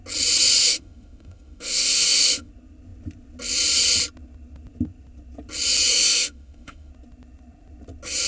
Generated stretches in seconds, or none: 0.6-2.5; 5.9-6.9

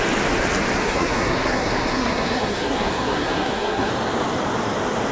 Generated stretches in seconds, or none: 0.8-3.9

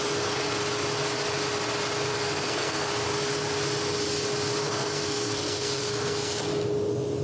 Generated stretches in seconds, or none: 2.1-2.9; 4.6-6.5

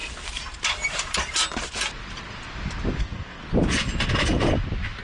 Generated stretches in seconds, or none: 3.0-3.4

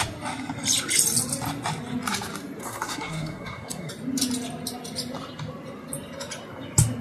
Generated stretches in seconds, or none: 2.6-3.9

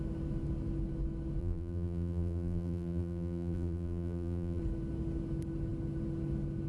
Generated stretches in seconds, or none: 1.4-4.6